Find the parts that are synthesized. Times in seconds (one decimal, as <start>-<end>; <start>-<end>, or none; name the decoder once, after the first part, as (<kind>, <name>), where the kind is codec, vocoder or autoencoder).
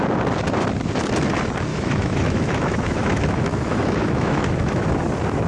1.7-5.0 (autoencoder, DAC-VAE)